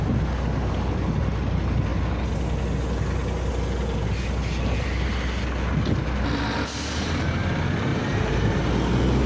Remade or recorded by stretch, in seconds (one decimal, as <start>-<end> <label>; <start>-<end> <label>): 0.0-7.9 recorded; 7.9-8.7 remade; 8.7-9.3 recorded